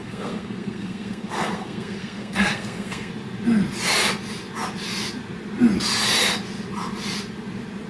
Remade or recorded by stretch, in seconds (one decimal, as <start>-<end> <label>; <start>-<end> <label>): 0.0-3.1 remade; 3.1-7.9 recorded